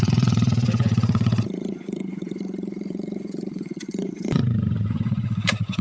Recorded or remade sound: remade